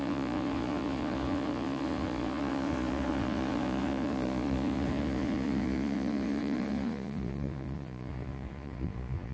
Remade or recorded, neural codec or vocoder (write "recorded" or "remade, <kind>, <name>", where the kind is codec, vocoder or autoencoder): remade, vocoder, Vocos